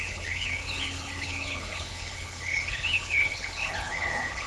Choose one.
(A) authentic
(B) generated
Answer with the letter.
B